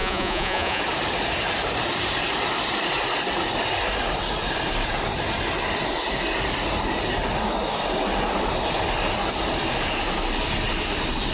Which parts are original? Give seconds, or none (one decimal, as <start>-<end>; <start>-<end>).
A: 0.8-11.3